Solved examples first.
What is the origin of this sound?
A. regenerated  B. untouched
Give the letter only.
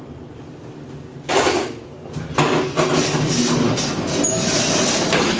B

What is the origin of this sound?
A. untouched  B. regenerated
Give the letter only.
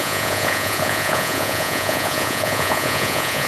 B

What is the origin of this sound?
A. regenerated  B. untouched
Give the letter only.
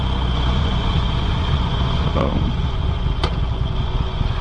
A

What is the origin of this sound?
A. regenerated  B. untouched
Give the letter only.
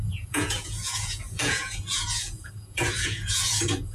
A